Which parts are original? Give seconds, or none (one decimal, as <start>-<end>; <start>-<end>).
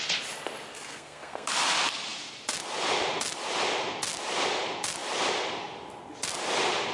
0.0-0.7; 1.5-6.9